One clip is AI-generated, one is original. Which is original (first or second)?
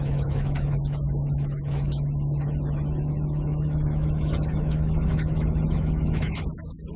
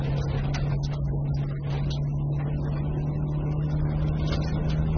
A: second